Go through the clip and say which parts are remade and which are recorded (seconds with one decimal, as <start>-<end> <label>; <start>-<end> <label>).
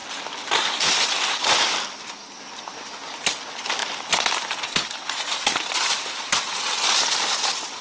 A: 0.0-7.8 recorded